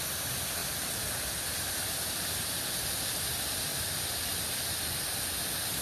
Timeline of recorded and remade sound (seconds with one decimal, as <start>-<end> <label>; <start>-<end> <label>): 0.0-5.8 recorded